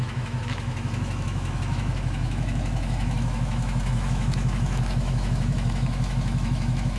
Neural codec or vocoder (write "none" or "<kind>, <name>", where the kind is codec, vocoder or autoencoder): autoencoder, DAC-VAE